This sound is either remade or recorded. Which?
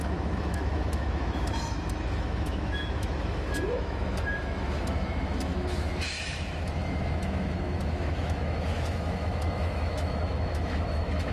remade